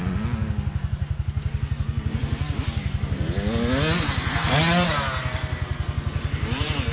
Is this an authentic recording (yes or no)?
yes